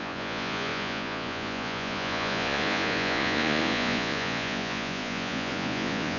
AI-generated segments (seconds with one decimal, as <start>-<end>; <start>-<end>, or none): 0.0-6.2